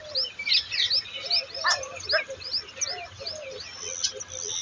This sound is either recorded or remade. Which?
recorded